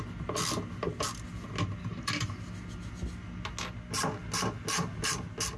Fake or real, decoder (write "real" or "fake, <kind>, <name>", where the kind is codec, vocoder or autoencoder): real